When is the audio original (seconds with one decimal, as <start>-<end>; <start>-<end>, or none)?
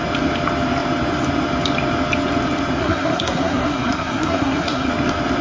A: 0.0-2.8; 4.9-5.4